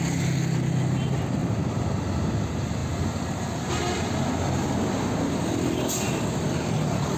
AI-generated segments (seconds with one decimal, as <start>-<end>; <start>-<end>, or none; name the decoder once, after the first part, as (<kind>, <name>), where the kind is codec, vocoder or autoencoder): none